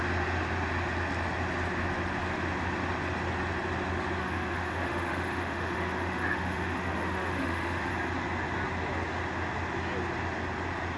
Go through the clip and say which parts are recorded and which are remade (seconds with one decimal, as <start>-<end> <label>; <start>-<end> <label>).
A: 0.0-4.2 recorded; 4.2-7.9 remade; 7.9-11.0 recorded